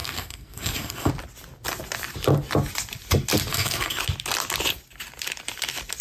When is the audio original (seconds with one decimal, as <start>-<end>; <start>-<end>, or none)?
1.1-3.5; 4.0-6.0

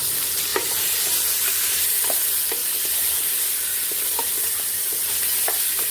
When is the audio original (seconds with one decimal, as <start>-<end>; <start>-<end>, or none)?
0.0-0.5; 1.1-3.7; 5.1-5.9

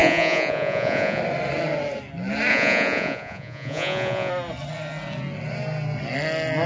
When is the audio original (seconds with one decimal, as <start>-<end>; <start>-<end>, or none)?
1.2-2.5; 4.3-6.7

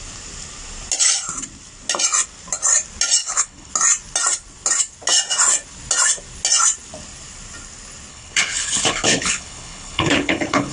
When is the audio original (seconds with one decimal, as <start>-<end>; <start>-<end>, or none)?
0.0-3.2; 3.7-8.1

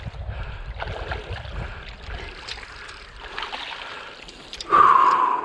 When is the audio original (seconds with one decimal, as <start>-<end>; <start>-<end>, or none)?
0.0-5.4